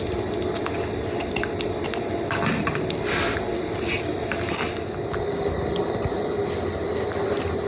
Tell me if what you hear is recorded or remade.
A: recorded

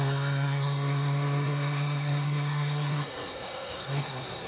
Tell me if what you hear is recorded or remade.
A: remade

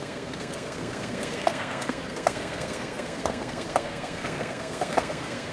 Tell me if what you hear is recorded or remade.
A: remade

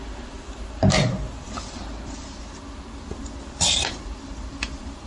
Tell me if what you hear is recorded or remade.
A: recorded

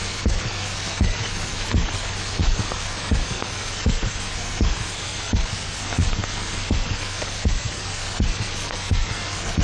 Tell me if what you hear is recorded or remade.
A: remade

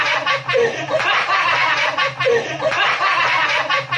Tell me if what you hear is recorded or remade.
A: recorded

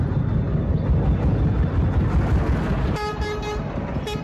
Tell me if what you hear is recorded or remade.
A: recorded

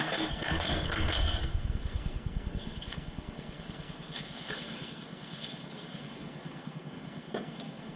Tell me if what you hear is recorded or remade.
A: remade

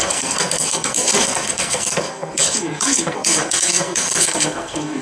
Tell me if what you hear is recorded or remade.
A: remade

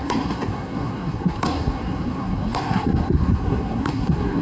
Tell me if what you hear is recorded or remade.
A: remade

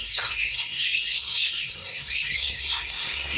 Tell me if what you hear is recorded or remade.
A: remade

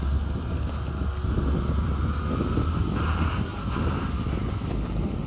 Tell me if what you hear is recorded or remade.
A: recorded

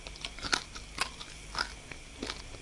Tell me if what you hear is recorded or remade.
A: recorded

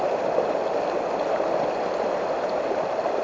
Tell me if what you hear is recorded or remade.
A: recorded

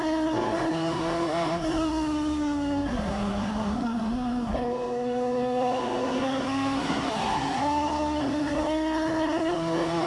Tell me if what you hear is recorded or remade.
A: remade